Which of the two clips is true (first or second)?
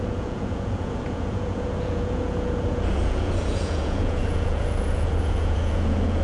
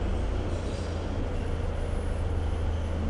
second